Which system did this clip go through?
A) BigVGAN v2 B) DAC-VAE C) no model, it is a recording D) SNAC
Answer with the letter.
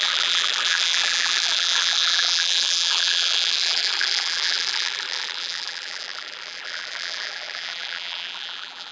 A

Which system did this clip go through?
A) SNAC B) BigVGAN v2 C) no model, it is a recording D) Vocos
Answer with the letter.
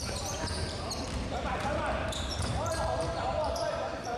B